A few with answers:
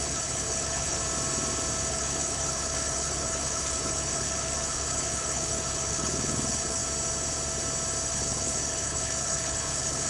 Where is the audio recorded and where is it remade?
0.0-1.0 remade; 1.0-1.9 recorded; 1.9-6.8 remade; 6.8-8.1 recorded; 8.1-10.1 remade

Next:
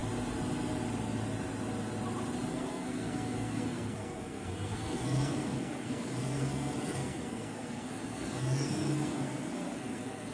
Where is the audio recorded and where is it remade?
0.0-2.5 recorded; 2.5-10.3 remade

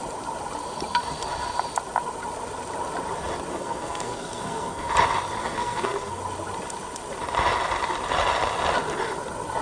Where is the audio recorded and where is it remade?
0.0-3.5 recorded; 3.5-4.9 remade; 4.9-5.4 recorded; 5.4-6.2 remade; 6.2-9.6 recorded

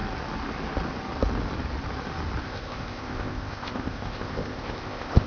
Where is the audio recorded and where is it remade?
0.0-2.4 recorded; 2.4-5.3 remade

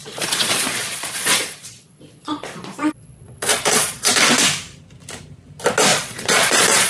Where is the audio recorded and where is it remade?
0.0-4.1 remade; 4.1-5.9 recorded; 5.9-6.9 remade

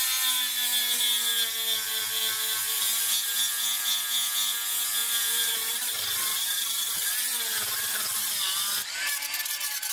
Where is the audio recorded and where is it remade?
0.0-5.0 recorded; 5.0-7.1 remade; 7.1-9.9 recorded

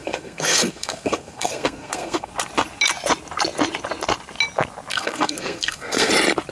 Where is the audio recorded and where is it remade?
0.0-2.3 remade; 2.3-4.9 recorded; 4.9-6.1 remade; 6.1-6.5 recorded

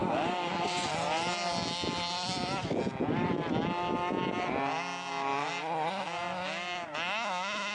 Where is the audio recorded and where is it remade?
0.0-0.5 remade; 0.5-7.7 recorded